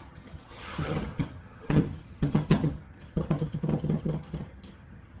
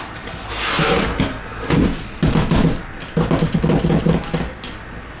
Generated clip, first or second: first